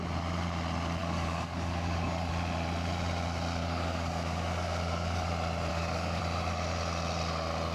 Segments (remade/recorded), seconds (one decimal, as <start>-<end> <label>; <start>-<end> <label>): 0.0-1.0 recorded; 1.0-2.3 remade; 2.3-3.6 recorded; 3.6-5.3 remade; 5.3-5.7 recorded; 5.7-6.2 remade; 6.2-7.7 recorded